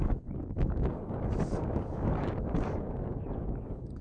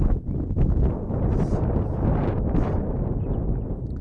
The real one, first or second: second